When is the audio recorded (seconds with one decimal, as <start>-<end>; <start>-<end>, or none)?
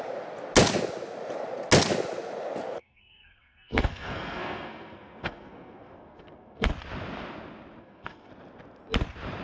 0.0-2.8; 6.7-7.8; 8.3-9.4